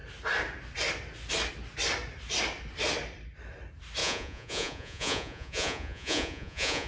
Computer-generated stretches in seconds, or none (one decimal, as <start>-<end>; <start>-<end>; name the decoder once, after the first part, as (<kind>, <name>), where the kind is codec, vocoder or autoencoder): 4.0-6.9 (vocoder, Vocos)